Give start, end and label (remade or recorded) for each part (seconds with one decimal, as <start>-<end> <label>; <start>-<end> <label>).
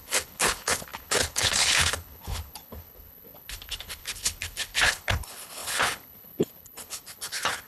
0.0-7.7 remade